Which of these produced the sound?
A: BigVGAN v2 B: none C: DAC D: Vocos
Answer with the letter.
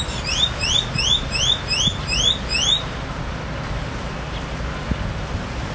B